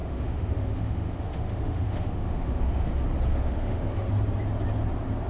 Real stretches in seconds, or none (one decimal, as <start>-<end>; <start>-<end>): 2.9-3.3; 4.1-5.3